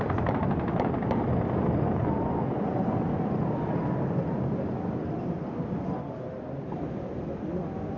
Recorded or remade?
recorded